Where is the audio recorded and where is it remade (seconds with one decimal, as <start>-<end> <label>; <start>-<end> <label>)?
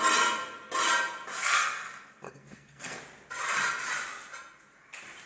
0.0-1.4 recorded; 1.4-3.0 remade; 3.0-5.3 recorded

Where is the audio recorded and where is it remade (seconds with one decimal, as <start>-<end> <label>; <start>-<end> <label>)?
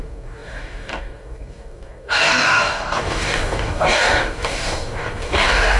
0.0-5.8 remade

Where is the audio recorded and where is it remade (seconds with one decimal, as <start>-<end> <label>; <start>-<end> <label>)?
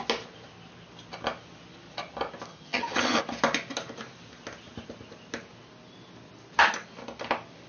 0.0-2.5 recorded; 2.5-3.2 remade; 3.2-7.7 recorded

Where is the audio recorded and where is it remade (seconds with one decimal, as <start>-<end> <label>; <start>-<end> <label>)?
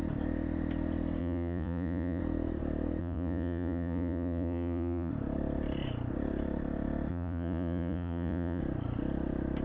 0.0-1.2 recorded; 1.2-2.2 remade; 2.2-3.0 recorded; 3.0-5.1 remade; 5.1-7.1 recorded; 7.1-8.6 remade; 8.6-9.6 recorded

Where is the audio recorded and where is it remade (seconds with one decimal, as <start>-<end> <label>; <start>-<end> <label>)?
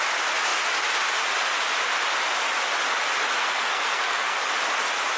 0.0-3.4 recorded; 3.4-4.4 remade; 4.4-5.2 recorded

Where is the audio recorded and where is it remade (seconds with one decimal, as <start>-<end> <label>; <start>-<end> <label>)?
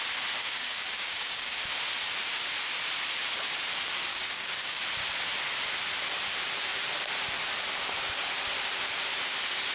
0.0-0.4 recorded; 0.4-1.7 remade; 1.7-4.1 recorded; 4.1-4.8 remade; 4.8-9.7 recorded